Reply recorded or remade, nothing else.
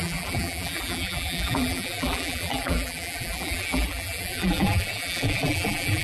remade